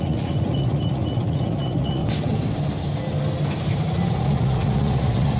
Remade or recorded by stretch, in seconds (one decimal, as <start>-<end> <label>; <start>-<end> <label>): 0.0-2.0 remade; 2.0-4.1 recorded; 4.1-5.4 remade